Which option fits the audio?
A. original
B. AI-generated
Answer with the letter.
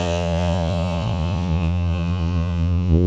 B